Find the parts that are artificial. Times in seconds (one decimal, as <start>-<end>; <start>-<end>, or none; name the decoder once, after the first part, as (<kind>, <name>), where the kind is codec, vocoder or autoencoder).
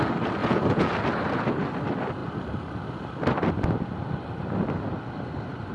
0.4-0.9 (vocoder, Vocos)